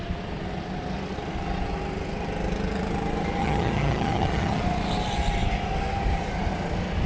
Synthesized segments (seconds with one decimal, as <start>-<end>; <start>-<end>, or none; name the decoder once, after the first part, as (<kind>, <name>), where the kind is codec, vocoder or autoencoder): 3.4-4.6 (vocoder, HiFi-GAN)